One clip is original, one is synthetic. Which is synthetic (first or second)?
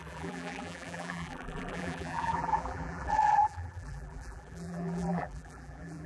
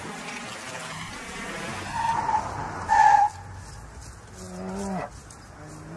first